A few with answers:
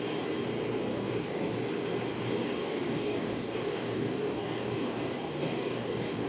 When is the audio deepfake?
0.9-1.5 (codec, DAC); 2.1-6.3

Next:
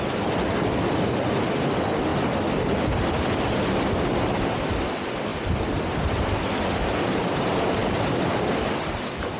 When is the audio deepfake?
5.3-6.4 (vocoder, BigVGAN v2); 7.8-9.0

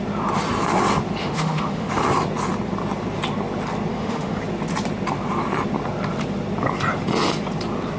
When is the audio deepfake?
1.2-1.9 (autoencoder, DAC-VAE); 3.9-4.4

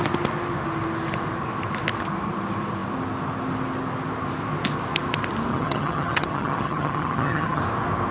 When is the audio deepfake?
5.5-7.6 (vocoder, HiFi-GAN)